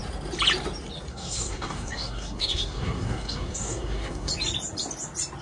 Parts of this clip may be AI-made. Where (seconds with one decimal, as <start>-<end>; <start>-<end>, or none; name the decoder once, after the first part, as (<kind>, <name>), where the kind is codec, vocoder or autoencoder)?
1.1-4.3 (codec, SNAC)